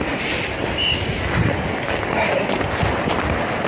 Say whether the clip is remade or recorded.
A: recorded